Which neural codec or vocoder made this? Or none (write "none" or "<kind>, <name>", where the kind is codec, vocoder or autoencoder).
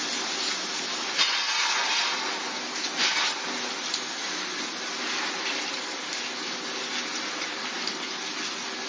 none